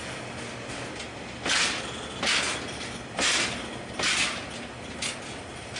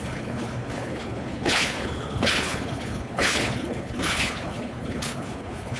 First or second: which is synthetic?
second